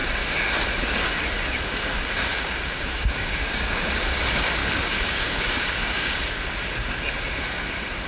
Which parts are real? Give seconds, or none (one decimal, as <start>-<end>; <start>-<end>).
0.0-2.3; 3.9-4.6; 6.4-8.1